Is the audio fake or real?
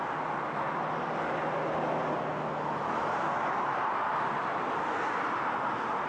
real